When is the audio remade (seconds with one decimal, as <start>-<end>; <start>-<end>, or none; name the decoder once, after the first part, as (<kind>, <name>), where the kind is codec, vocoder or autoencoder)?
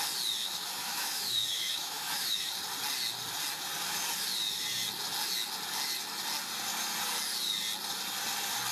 0.4-2.5 (autoencoder, DAC-VAE)